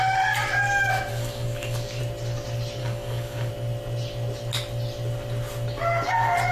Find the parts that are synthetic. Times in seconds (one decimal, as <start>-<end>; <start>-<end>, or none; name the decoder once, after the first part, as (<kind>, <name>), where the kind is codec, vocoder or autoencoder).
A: 1.1-2.0 (codec, DAC); 2.8-3.5